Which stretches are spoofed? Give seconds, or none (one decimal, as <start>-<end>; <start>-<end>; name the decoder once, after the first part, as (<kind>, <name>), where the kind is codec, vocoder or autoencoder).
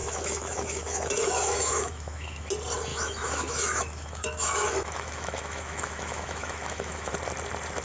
0.0-2.5 (autoencoder, DAC-VAE); 2.9-7.1